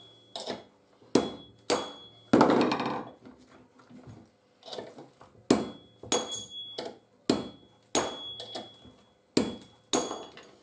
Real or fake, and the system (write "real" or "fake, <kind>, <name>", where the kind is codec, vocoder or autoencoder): real